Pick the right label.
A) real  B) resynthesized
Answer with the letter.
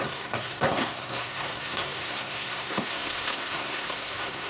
B